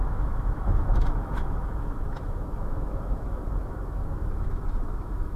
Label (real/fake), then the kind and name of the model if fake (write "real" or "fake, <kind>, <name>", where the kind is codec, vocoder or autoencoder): fake, autoencoder, DAC-VAE